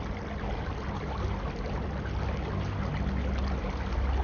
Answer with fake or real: real